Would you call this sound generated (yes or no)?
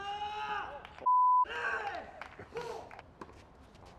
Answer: no